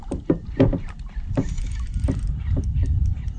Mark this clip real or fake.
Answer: real